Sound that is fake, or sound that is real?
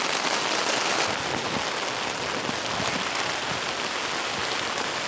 real